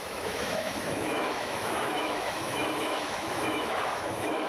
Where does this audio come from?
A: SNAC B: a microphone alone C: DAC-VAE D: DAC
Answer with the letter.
C